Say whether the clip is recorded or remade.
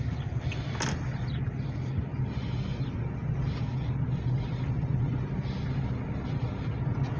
recorded